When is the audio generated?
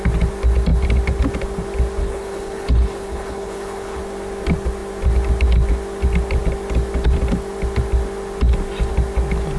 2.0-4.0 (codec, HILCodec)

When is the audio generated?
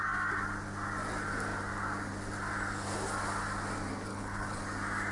4.1-4.6 (codec, HILCodec)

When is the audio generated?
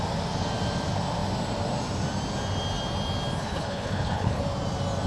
3.4-4.4 (codec, HILCodec)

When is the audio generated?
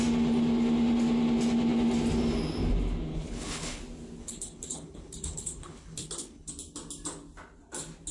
3.1-3.8 (codec, HILCodec); 4.2-6.5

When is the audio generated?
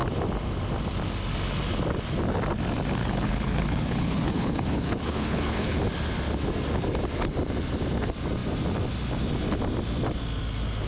3.0-5.8 (codec, HILCodec)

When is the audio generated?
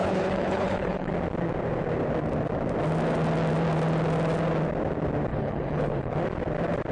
0.0-1.1 (codec, HILCodec); 5.3-6.1